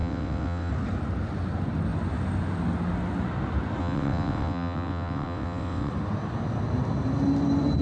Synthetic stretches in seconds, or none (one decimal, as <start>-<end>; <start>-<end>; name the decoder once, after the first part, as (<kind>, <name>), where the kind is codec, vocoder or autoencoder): 0.0-0.7 (vocoder, WaveNeXt); 3.8-5.9